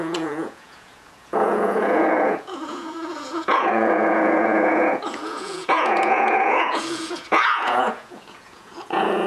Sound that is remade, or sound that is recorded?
remade